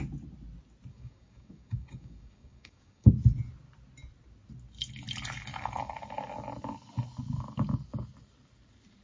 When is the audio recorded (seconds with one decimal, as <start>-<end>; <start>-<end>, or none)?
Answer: 0.0-0.9; 3.1-9.0